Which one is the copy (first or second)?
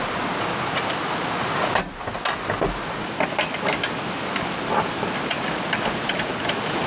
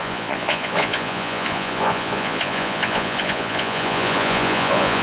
second